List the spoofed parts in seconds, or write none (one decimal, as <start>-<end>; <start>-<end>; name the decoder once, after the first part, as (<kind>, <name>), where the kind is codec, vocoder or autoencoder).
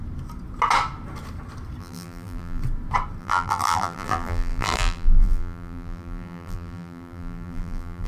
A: 1.8-2.6 (vocoder, BigVGAN v2); 3.2-8.1